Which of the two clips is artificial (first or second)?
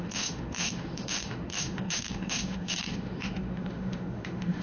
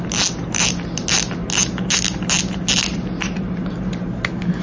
first